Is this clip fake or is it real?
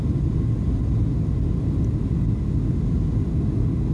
real